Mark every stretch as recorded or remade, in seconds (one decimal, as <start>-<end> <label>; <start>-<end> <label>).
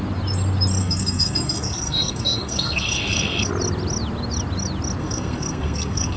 0.0-0.8 recorded; 0.8-3.5 remade; 3.5-5.0 recorded; 5.0-6.2 remade